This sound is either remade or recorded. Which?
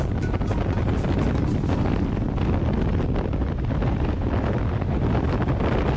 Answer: recorded